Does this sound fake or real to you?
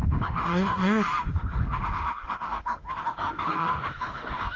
fake